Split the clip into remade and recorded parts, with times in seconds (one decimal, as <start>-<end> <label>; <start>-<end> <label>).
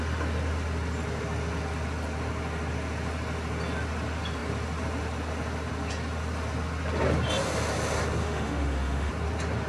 0.0-8.2 recorded; 8.2-9.1 remade; 9.1-9.7 recorded